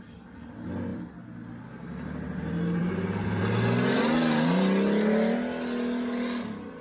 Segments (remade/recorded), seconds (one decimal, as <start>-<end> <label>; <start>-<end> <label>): 0.0-6.8 recorded